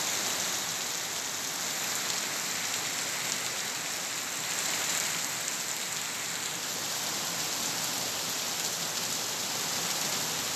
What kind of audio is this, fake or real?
real